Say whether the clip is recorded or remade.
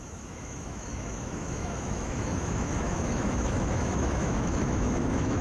remade